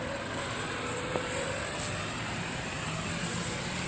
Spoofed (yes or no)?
no